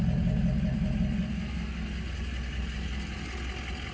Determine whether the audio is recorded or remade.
recorded